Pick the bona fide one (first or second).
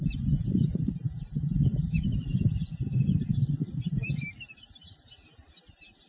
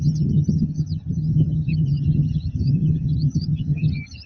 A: first